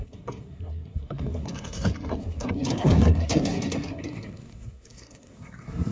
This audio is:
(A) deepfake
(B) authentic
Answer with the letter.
A